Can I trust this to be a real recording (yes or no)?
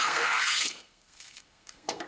no